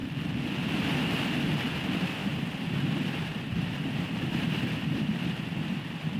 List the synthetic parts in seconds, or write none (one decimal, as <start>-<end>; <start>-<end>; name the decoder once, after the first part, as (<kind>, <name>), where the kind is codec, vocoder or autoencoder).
2.2-6.2 (vocoder, BigVGAN v2)